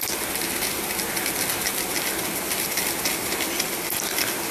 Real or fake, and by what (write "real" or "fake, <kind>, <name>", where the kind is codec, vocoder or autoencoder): real